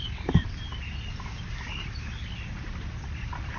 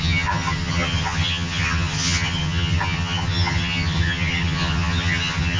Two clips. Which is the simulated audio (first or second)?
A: second